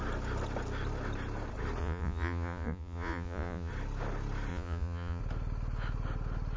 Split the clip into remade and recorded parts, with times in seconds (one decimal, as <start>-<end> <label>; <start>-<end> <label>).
0.0-1.8 recorded; 1.8-3.7 remade; 3.7-4.5 recorded; 4.5-5.2 remade; 5.2-6.6 recorded